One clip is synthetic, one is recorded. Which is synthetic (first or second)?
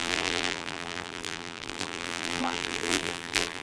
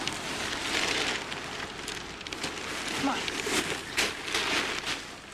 first